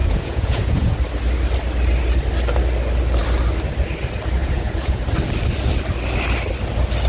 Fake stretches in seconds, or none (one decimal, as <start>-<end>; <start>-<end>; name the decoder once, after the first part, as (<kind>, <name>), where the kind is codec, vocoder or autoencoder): 0.0-0.9 (vocoder, Vocos); 4.4-5.0